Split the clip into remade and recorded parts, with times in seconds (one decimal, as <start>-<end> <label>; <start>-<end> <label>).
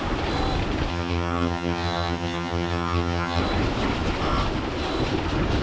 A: 0.0-0.9 recorded; 0.9-3.4 remade; 3.4-5.6 recorded